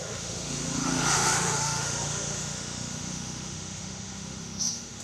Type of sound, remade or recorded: remade